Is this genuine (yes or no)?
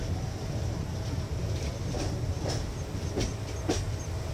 yes